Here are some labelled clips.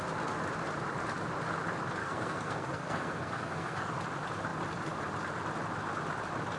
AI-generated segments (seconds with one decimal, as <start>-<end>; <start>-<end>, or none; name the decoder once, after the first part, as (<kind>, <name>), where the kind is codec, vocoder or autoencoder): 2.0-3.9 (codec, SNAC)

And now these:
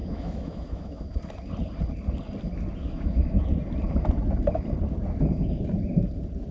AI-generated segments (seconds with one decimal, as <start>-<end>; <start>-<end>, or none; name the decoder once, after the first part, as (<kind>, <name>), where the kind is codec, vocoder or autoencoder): 0.0-1.2 (autoencoder, DAC-VAE); 2.8-3.6

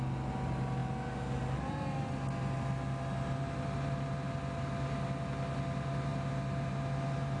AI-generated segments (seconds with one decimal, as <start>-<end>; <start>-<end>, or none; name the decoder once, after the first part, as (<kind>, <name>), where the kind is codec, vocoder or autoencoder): none

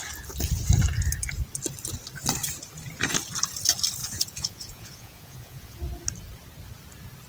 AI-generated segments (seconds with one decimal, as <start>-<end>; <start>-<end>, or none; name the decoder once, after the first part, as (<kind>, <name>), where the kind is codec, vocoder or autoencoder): 4.0-5.8 (vocoder, Vocos)

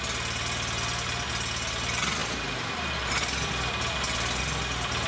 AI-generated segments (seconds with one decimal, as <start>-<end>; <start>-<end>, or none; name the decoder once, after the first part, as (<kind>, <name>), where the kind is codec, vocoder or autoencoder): none

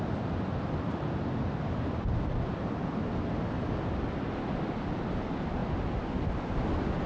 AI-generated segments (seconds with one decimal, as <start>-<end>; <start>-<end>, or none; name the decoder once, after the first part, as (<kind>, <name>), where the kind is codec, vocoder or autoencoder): none